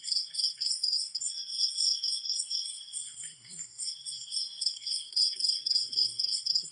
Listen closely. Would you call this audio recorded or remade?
remade